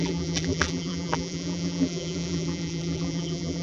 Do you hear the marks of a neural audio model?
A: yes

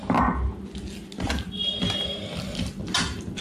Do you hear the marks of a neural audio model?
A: no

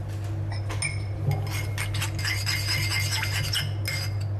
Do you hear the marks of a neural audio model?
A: no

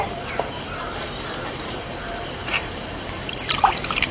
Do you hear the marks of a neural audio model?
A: yes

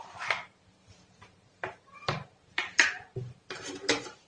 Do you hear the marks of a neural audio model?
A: yes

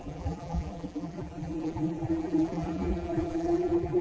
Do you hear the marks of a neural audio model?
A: yes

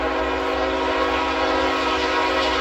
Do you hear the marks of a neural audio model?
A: no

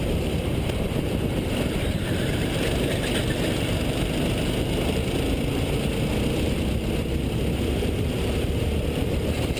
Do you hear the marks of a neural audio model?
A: yes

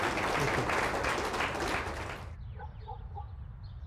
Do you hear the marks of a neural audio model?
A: no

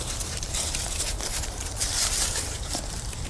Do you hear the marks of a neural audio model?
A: yes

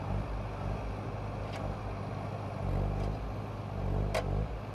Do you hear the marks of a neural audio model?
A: no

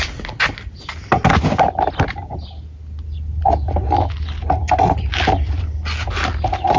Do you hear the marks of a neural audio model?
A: no